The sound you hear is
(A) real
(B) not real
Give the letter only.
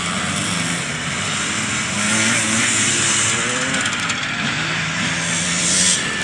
A